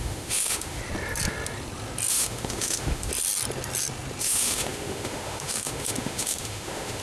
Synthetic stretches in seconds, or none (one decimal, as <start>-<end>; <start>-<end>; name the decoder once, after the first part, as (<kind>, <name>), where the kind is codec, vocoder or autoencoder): 0.0-0.8 (autoencoder, DAC-VAE); 2.1-3.1; 4.2-7.0